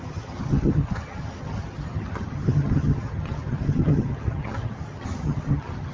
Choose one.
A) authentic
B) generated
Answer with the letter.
B